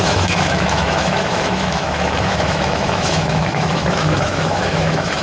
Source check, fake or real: fake